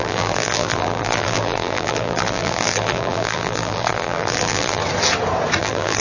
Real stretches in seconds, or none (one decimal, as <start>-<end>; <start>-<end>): 4.8-5.6